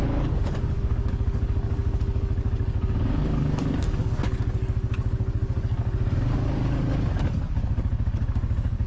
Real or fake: fake